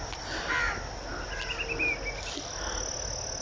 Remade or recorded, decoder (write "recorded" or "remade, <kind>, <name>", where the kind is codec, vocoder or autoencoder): recorded